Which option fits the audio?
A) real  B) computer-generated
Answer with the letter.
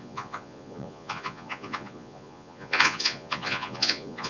B